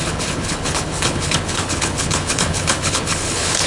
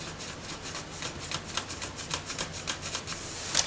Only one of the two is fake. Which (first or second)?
first